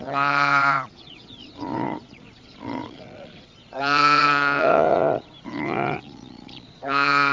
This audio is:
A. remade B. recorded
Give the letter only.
A